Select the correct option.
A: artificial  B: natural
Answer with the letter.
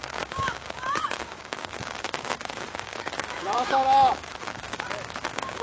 A